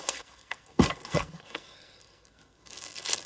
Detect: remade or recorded remade